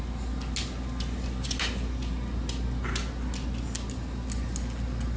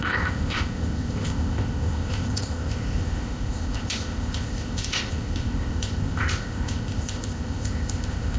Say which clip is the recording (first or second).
first